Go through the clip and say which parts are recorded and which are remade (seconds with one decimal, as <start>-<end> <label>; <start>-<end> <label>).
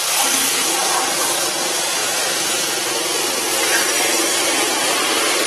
0.0-5.5 recorded